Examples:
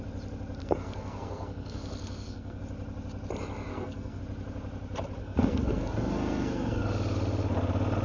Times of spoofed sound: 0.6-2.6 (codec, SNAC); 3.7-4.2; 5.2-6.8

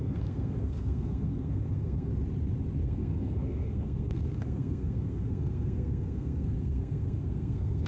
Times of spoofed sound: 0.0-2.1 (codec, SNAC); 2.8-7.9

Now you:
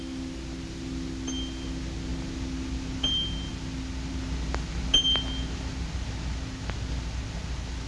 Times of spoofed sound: none

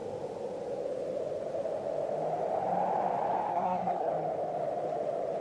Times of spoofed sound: 3.5-4.1 (codec, SNAC)

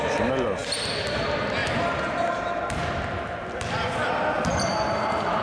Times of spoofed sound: none

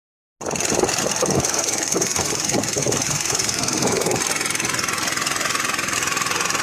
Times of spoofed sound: 1.0-4.2 (codec, SNAC)

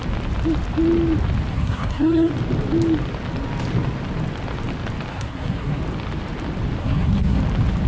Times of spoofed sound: 1.5-2.3 (codec, SNAC); 5.1-5.8; 6.8-7.4